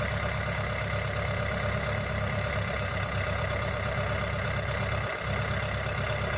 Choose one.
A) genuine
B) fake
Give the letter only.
A